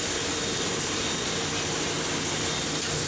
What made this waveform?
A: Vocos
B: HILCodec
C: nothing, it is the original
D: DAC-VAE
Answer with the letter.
C